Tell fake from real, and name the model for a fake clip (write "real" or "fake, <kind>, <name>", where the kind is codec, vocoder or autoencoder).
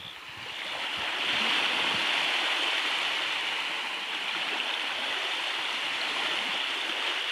real